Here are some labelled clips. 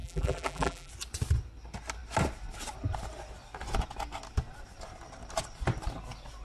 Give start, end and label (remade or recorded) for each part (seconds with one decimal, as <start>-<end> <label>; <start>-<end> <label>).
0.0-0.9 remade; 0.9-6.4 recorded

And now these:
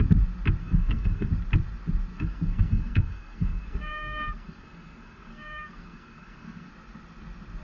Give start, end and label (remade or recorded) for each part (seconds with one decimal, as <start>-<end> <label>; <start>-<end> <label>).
0.0-0.6 recorded; 0.6-1.3 remade; 1.3-2.1 recorded; 2.1-6.7 remade; 6.7-7.6 recorded

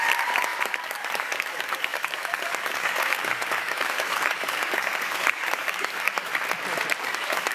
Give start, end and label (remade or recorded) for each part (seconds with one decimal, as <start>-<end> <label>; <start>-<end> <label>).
0.0-6.3 remade; 6.3-7.0 recorded; 7.0-7.5 remade

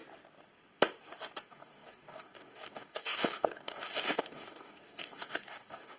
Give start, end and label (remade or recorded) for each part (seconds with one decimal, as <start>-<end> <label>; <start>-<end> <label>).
0.0-1.4 recorded; 1.4-6.0 remade